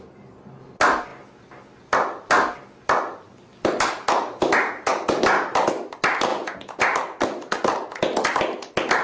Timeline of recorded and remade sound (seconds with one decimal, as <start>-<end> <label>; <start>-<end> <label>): 0.0-6.3 recorded; 6.3-6.8 remade; 6.8-9.0 recorded